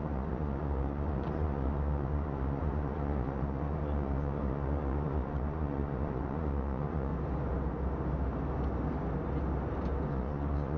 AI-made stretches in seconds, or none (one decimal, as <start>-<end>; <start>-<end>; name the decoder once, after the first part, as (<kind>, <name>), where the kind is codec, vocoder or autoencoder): 0.0-7.1 (vocoder, Vocos); 10.1-10.8